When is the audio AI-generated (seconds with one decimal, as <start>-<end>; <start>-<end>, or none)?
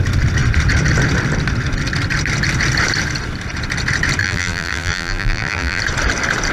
4.2-5.8